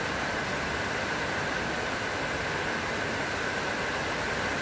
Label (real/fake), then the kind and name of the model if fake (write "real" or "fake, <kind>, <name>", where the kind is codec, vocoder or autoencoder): real